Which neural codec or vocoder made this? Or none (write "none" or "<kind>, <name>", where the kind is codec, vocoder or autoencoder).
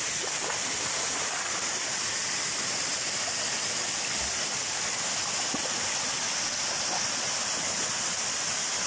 none